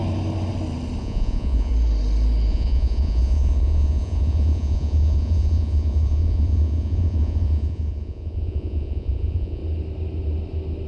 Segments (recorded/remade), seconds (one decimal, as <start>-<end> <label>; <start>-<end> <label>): 0.0-1.0 recorded; 1.0-1.7 remade; 1.7-2.5 recorded; 2.5-9.6 remade; 9.6-10.9 recorded